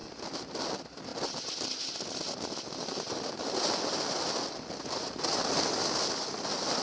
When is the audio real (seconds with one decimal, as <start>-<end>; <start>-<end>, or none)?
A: 0.0-6.8